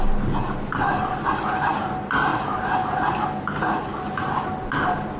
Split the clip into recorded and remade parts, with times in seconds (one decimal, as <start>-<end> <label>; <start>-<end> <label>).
0.0-5.2 recorded